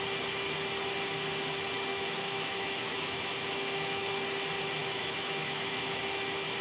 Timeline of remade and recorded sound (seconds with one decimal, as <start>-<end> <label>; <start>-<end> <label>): 0.0-1.9 recorded; 1.9-4.1 remade; 4.1-4.8 recorded; 4.8-6.0 remade; 6.0-6.6 recorded